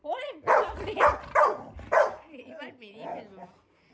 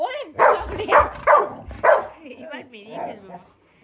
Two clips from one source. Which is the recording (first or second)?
second